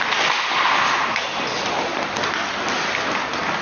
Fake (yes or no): no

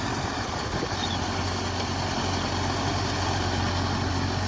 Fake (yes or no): no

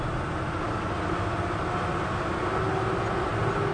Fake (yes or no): no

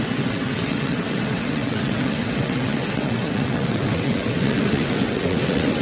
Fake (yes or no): yes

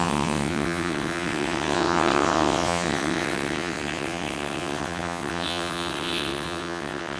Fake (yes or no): yes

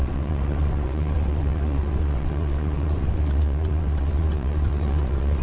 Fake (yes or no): yes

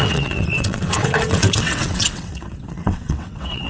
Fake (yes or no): yes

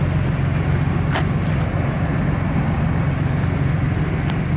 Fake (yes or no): no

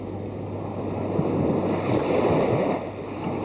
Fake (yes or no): no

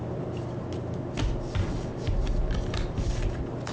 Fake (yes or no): no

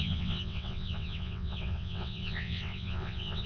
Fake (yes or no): yes